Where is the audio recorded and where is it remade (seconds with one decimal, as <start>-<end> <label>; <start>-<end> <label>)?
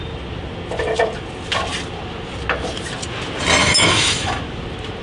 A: 0.0-3.6 recorded; 3.6-4.4 remade; 4.4-5.0 recorded